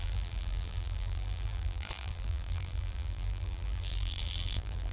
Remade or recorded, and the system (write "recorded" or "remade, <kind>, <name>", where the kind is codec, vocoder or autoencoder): remade, vocoder, BigVGAN v2